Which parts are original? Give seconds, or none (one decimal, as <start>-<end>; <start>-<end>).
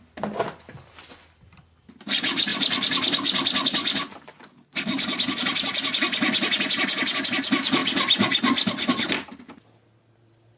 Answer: 0.0-10.6